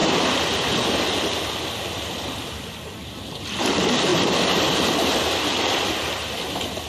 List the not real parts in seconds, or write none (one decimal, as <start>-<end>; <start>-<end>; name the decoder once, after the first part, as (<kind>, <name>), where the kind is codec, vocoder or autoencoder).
none